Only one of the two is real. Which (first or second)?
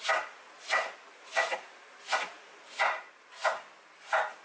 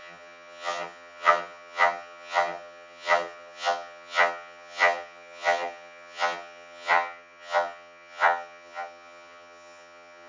first